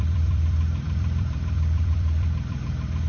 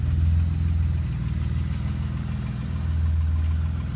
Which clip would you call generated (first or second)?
first